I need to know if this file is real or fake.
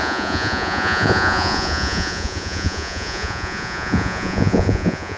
fake